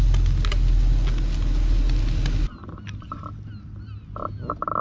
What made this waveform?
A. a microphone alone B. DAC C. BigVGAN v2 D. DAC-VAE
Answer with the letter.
A